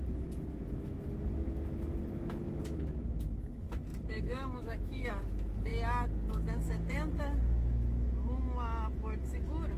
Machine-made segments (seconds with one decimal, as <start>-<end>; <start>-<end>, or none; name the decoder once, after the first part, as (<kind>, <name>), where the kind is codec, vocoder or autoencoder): 0.0-5.7 (autoencoder, DAC-VAE); 6.3-9.8